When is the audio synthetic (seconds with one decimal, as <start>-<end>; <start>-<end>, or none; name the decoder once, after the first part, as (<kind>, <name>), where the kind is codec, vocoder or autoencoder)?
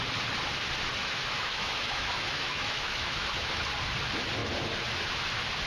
1.0-3.6 (autoencoder, DAC-VAE)